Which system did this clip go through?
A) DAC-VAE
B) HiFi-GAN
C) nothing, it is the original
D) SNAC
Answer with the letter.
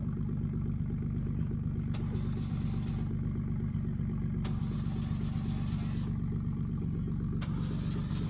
C